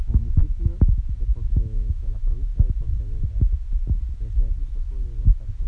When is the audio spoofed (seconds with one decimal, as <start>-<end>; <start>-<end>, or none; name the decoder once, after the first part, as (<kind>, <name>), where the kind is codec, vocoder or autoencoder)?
0.0-0.4 (autoencoder, DAC-VAE); 1.5-2.5